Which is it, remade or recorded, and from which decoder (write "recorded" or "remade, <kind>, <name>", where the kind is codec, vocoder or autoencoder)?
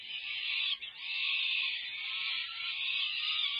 recorded